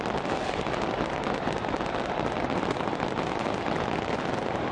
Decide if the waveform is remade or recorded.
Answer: recorded